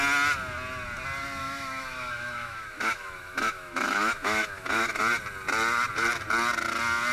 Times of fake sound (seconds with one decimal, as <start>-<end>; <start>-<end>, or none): 1.4-5.0